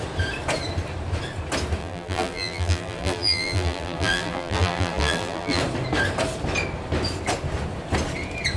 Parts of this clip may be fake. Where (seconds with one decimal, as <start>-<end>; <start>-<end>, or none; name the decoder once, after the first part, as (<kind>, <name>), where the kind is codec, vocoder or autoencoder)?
1.8-5.6 (vocoder, BigVGAN v2)